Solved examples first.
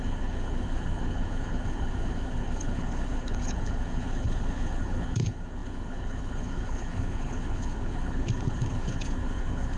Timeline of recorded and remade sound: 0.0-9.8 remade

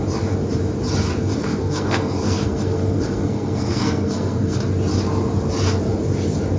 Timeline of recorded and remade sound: 0.0-1.4 recorded; 1.4-4.6 remade; 4.6-6.6 recorded

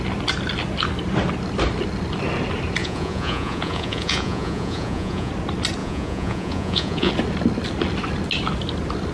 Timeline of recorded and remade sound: 0.0-2.8 recorded; 2.8-5.3 remade; 5.3-5.8 recorded; 5.8-7.1 remade; 7.1-9.1 recorded